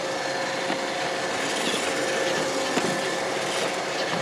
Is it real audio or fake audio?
real